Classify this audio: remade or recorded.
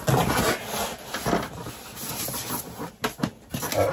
recorded